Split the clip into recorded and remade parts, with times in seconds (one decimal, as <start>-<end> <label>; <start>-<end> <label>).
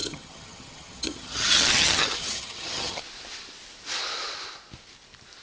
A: 0.0-3.0 remade; 3.0-5.4 recorded